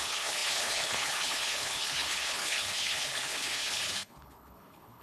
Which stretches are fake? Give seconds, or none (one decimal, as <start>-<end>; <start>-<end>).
0.0-5.0